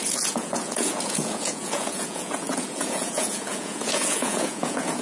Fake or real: fake